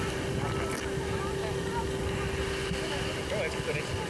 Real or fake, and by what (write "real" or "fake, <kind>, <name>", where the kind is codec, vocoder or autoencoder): real